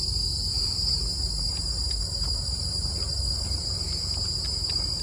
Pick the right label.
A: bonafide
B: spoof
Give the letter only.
A